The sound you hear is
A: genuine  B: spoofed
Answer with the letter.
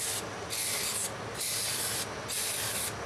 A